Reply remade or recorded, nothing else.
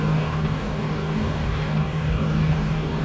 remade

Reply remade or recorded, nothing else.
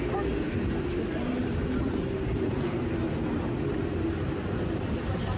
recorded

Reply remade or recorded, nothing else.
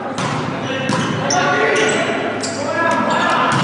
recorded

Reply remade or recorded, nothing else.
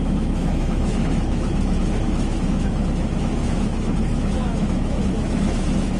remade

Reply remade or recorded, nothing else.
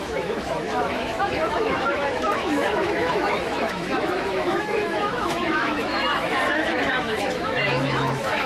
remade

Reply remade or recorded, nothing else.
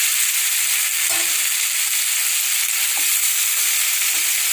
recorded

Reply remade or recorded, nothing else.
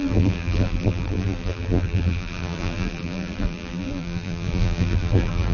remade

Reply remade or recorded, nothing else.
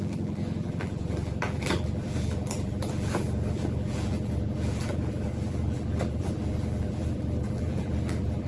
remade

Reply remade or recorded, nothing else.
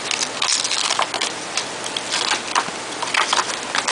recorded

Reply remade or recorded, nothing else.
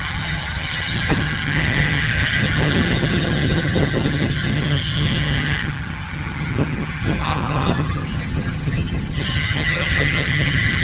remade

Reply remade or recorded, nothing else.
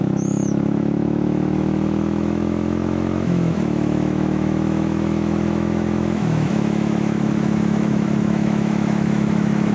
remade